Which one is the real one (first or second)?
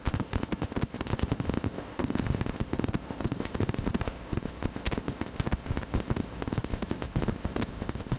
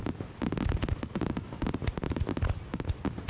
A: second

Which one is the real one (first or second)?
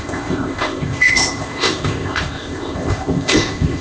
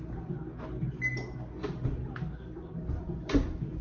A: second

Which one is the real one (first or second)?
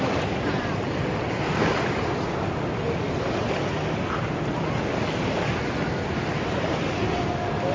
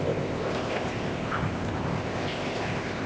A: first